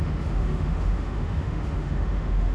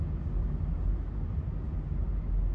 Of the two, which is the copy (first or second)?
first